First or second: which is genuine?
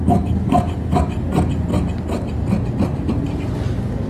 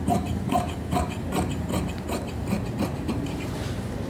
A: first